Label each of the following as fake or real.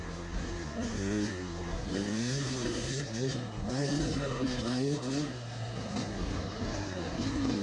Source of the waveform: fake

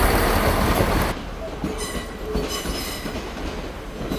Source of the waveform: real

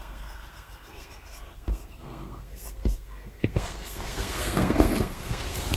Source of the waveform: fake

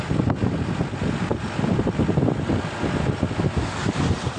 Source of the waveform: real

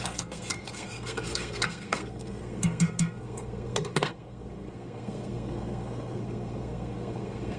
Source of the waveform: fake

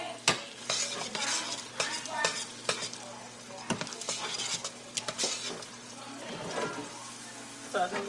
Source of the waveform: real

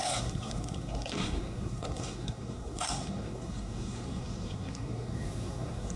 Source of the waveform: fake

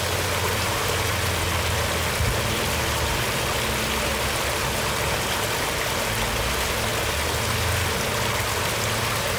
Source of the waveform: real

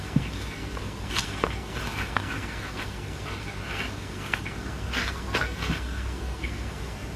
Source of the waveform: fake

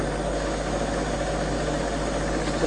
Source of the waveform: real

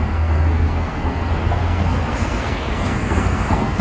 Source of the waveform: fake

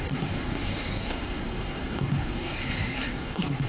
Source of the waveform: fake